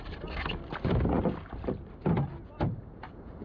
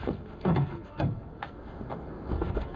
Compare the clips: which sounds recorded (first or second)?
first